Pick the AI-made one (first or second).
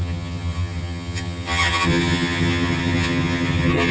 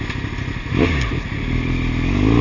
first